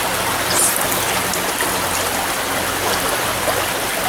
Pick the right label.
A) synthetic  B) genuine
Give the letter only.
B